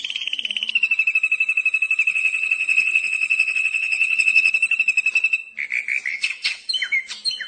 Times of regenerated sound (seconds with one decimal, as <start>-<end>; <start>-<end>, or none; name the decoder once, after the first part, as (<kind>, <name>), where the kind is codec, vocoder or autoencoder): 2.1-4.5 (vocoder, WaveNeXt); 6.1-6.7